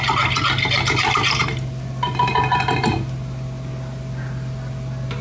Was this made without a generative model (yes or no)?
yes